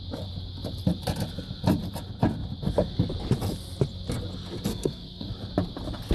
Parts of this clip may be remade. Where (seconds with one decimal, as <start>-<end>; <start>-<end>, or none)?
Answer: 4.7-5.3